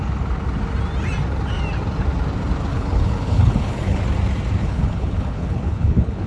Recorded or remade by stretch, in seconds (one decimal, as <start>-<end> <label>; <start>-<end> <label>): 0.0-2.7 recorded; 2.7-4.0 remade; 4.0-4.6 recorded; 4.6-6.3 remade